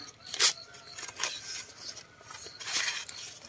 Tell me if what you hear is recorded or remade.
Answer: recorded